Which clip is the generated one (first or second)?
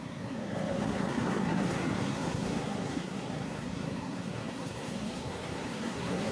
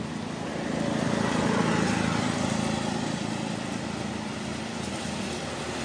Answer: first